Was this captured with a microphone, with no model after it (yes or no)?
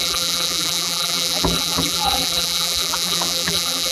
no